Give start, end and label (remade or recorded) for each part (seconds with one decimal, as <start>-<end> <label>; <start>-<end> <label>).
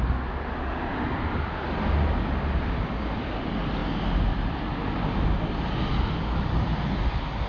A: 0.0-7.5 recorded